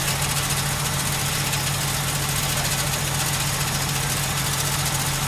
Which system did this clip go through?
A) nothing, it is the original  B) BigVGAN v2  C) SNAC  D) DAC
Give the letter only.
A